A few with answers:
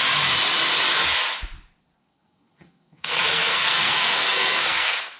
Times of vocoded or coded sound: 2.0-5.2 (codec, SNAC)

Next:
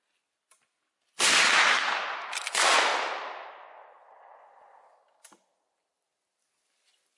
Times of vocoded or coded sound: none

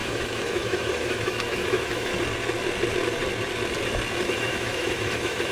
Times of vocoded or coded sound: 0.0-2.1 (autoencoder, DAC-VAE); 4.2-5.5

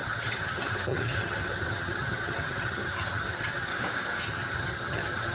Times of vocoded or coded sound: 0.0-3.7 (vocoder, HiFi-GAN); 4.2-5.3

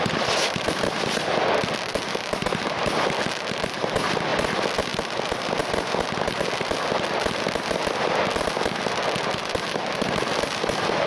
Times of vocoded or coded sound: none

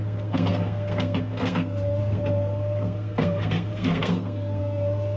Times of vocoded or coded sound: 0.0-5.2 (codec, SNAC)

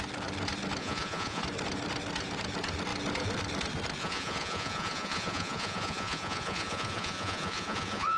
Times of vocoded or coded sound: 0.8-1.4 (vocoder, Vocos); 4.0-8.2

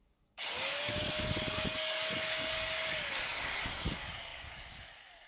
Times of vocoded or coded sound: 0.0-5.3 (codec, DAC)